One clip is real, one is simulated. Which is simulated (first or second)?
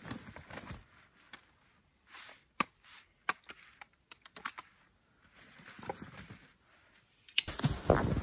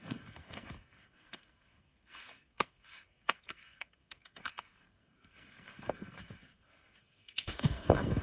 second